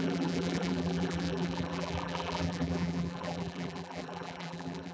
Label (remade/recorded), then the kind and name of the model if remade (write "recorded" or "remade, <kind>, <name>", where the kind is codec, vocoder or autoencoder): remade, vocoder, BigVGAN v2